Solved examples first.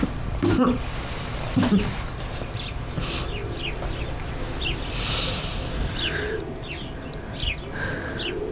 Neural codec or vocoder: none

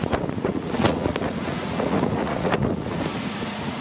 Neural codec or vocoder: vocoder, Vocos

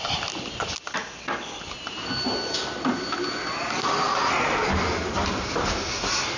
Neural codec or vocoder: none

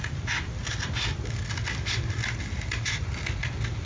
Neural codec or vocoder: none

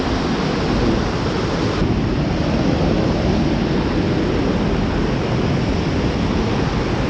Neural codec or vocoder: none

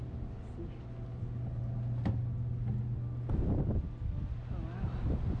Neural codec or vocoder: none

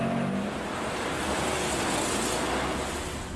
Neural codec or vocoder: none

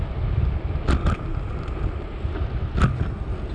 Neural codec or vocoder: none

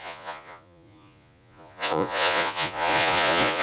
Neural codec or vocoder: vocoder, Vocos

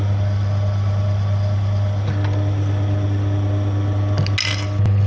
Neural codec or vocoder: none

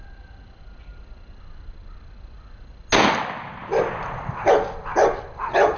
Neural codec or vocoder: none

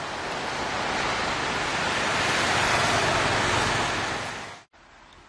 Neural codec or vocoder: none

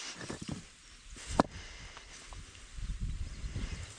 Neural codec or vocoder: none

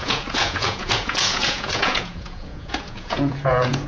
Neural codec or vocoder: vocoder, Vocos